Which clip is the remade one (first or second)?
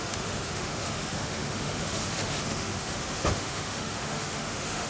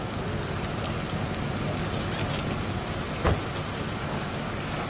first